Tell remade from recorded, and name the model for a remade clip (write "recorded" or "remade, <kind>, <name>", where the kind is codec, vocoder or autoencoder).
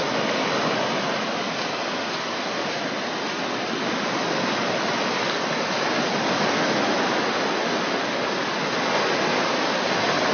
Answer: recorded